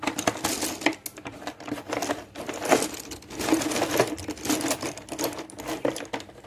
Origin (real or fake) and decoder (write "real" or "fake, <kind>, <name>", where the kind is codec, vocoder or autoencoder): real